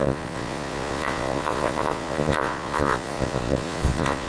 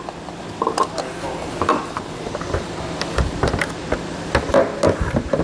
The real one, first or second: second